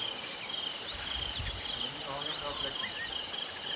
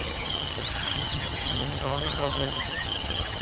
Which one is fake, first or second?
second